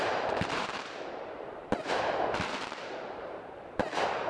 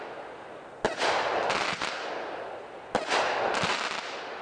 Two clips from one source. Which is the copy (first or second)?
first